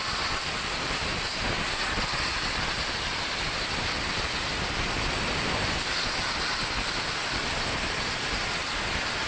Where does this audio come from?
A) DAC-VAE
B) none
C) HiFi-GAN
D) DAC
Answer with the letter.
B